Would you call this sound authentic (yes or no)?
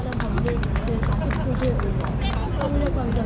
yes